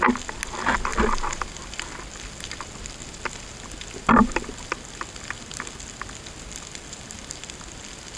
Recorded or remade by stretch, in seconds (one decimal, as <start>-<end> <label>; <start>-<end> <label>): 0.0-8.2 recorded

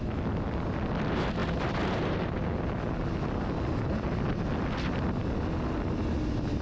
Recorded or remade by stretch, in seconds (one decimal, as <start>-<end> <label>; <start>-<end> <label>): 0.0-6.6 recorded

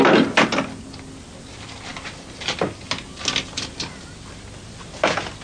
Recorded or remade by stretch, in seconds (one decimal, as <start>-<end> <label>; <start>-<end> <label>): 0.0-5.4 recorded

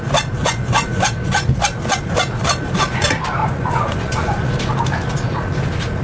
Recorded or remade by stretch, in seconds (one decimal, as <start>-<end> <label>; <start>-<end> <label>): 0.0-0.4 recorded; 0.4-1.1 remade; 1.1-3.4 recorded; 3.4-4.5 remade; 4.5-6.0 recorded

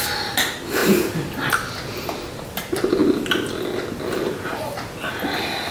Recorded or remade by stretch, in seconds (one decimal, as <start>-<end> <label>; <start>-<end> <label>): 0.0-5.7 recorded

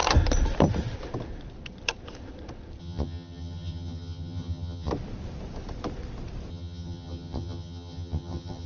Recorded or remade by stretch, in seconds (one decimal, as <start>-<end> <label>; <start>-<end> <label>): 0.0-2.8 recorded; 2.8-4.9 remade; 4.9-6.5 recorded; 6.5-8.7 remade

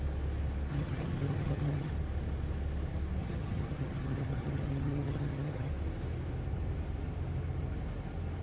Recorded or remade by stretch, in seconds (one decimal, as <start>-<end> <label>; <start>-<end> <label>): 0.0-0.7 recorded; 0.7-1.9 remade; 1.9-3.2 recorded; 3.2-5.7 remade; 5.7-8.4 recorded